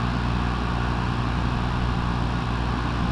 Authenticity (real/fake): real